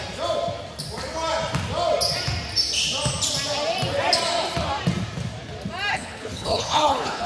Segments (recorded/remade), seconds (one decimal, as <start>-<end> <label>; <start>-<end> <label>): 0.0-5.9 recorded; 5.9-7.3 remade